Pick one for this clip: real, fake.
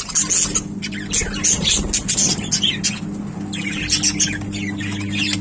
real